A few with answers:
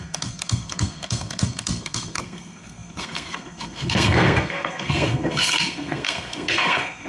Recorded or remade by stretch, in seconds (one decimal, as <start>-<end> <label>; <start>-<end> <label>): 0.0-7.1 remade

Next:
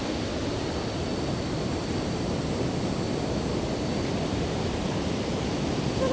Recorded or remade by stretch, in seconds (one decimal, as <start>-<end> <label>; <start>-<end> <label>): 0.0-1.1 recorded; 1.1-4.7 remade; 4.7-6.1 recorded

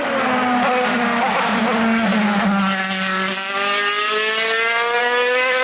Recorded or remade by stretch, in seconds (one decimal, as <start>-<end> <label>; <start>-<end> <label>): 0.0-1.2 recorded; 1.2-1.6 remade; 1.6-5.0 recorded; 5.0-5.6 remade

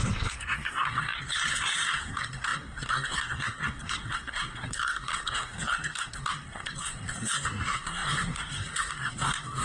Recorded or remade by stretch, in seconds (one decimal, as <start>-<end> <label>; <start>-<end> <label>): 0.0-9.6 remade